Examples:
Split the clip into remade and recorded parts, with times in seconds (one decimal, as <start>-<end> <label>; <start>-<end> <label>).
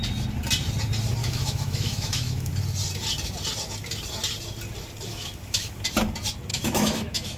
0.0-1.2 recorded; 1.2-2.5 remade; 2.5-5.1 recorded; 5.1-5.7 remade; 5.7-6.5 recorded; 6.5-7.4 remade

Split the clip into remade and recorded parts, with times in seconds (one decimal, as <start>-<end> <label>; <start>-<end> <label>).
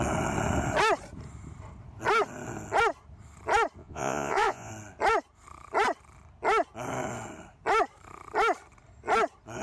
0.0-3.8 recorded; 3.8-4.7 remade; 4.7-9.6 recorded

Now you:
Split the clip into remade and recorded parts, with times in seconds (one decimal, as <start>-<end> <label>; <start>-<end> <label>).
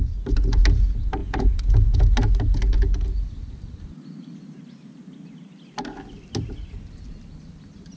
0.0-1.2 recorded; 1.2-2.0 remade; 2.0-8.0 recorded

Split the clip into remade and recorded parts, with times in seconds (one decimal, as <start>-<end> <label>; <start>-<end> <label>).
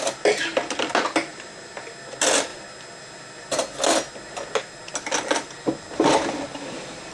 0.0-1.3 recorded; 1.3-1.8 remade; 1.8-7.1 recorded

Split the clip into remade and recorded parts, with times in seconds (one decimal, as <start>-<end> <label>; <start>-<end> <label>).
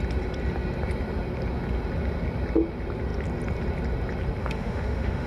0.0-4.4 recorded; 4.4-5.3 remade